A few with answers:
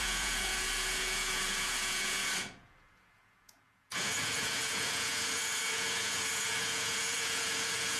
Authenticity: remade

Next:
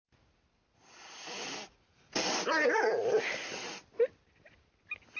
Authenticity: recorded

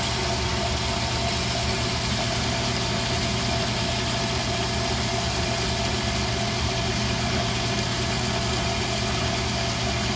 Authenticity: recorded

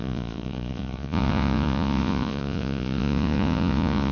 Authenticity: remade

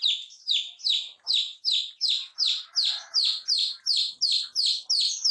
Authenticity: recorded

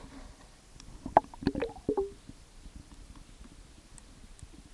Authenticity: recorded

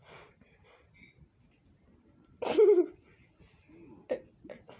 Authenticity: recorded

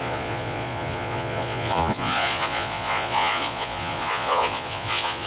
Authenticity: remade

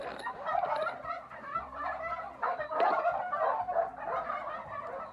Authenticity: recorded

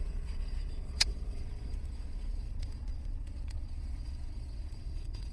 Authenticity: remade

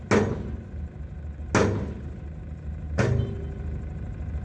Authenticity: recorded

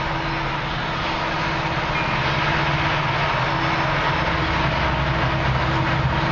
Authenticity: recorded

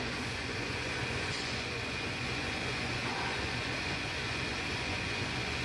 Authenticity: remade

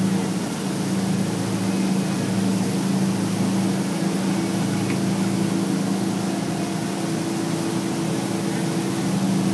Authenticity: recorded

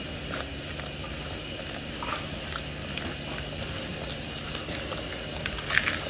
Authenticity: recorded